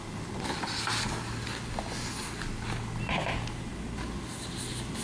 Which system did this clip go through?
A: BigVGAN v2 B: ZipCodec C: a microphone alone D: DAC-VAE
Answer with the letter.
C